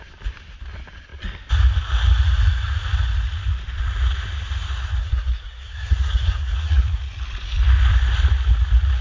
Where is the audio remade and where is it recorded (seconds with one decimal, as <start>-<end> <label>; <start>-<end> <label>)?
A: 0.0-5.0 recorded; 5.0-7.0 remade; 7.0-9.0 recorded